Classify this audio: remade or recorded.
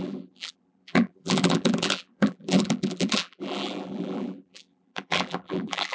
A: remade